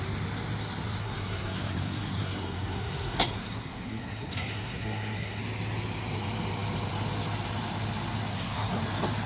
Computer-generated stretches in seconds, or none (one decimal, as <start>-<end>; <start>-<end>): 1.0-5.4; 8.3-8.8